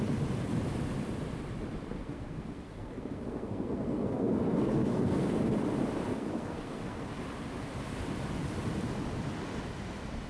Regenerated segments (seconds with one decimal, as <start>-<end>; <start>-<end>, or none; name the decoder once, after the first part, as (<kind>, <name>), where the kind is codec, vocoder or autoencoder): 1.9-5.3 (codec, SNAC); 6.1-7.1